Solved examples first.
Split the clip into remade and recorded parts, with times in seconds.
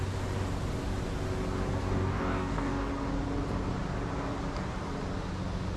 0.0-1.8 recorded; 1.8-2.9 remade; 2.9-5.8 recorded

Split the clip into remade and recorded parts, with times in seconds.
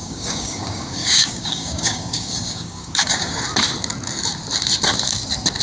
0.0-3.4 remade; 3.4-5.6 recorded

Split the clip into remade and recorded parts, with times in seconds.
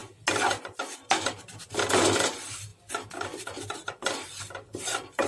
0.0-5.3 recorded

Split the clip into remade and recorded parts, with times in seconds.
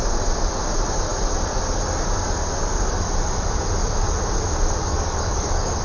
0.0-4.9 recorded; 4.9-5.8 remade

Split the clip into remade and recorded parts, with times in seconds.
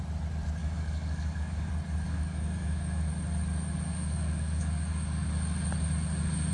0.0-0.6 recorded; 0.6-1.7 remade; 1.7-2.1 recorded; 2.1-3.1 remade; 3.1-3.9 recorded; 3.9-5.3 remade; 5.3-6.5 recorded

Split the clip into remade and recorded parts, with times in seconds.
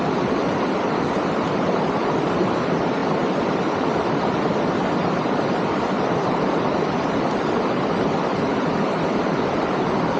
0.0-10.2 recorded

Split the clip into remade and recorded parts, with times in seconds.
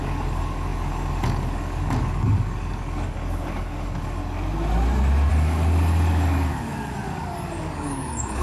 0.0-4.2 remade; 4.2-5.3 recorded; 5.3-8.4 remade